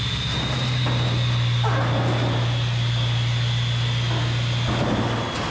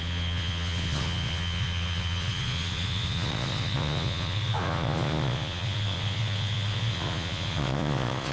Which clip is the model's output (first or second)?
second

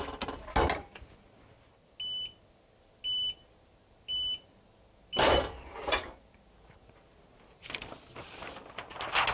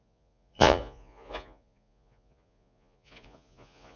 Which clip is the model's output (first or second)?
second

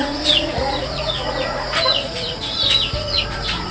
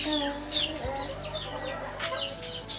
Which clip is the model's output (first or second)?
first